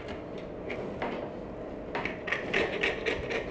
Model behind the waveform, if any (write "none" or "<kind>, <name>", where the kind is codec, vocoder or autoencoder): none